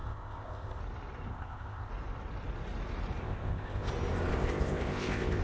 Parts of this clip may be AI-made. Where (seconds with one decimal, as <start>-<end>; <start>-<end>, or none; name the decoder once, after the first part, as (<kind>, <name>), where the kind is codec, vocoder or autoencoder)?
0.0-0.8 (codec, ZipCodec); 1.3-1.9; 3.2-3.9; 4.3-5.4